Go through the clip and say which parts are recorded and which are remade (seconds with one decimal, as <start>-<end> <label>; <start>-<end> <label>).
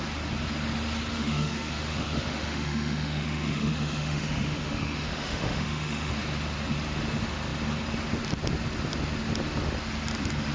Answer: 0.0-1.1 recorded; 1.1-6.1 remade; 6.1-10.5 recorded